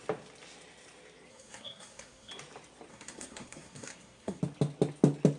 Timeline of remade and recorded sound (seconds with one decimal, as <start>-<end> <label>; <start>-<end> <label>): 0.0-1.3 recorded; 1.3-2.3 remade; 2.3-2.9 recorded; 2.9-4.4 remade; 4.4-5.4 recorded